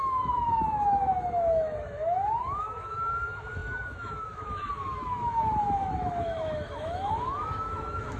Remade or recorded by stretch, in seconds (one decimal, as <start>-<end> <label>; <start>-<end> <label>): 0.0-8.2 remade